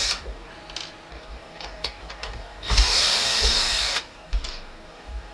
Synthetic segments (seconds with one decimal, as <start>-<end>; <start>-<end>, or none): 0.0-0.5; 1.1-5.3